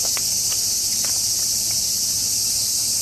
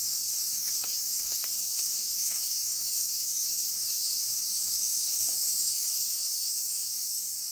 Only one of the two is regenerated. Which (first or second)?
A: second